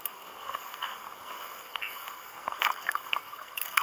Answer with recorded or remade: remade